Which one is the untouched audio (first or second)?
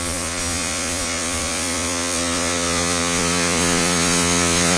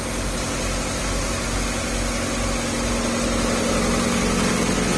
second